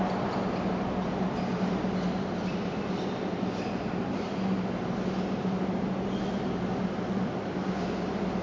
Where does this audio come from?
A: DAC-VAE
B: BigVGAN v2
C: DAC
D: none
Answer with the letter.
D